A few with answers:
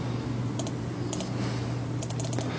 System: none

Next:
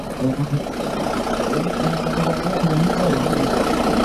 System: none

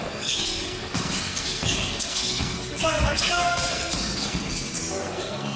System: codec, SNAC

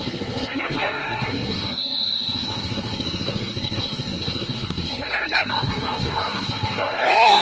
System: codec, SNAC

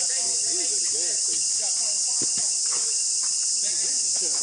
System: none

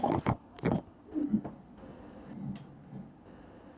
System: none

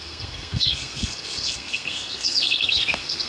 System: codec, SNAC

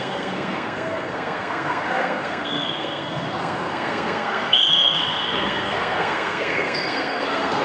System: codec, SNAC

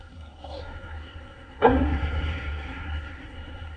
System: codec, SNAC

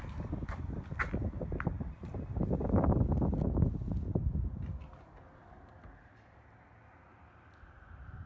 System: none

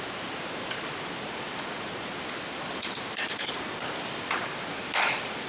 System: none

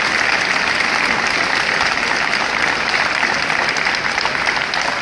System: none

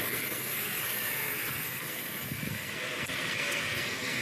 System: codec, SNAC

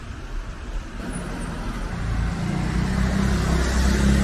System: none